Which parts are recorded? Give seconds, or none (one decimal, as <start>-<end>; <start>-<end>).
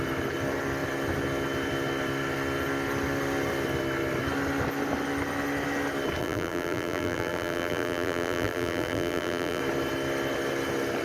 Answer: 0.0-6.2; 9.6-11.0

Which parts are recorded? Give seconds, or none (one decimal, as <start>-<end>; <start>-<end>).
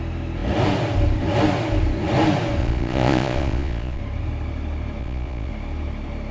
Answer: 0.0-2.6; 4.0-5.0; 5.5-6.3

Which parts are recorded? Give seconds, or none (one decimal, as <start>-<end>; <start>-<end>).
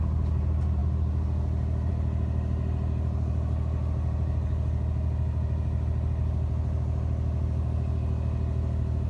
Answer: 0.0-9.1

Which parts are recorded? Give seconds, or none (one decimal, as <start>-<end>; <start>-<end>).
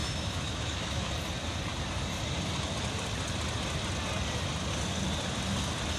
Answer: 1.1-6.0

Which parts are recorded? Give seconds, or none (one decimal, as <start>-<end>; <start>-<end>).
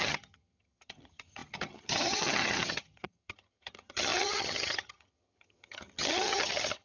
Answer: none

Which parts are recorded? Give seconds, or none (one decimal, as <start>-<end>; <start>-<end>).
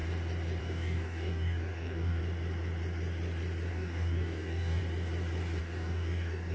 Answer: 0.0-0.6; 2.2-3.7; 4.8-5.6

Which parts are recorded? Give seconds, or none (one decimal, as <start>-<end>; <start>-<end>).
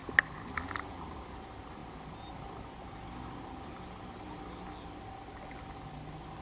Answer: 0.0-6.4